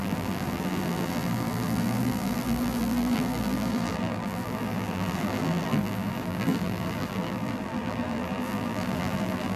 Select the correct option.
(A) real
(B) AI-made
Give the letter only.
B